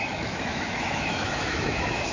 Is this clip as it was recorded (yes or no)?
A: no